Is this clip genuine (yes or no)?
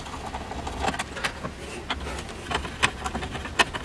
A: yes